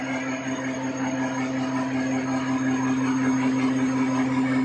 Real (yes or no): yes